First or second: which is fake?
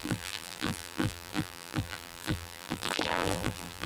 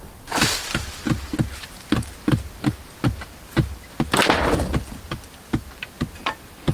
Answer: first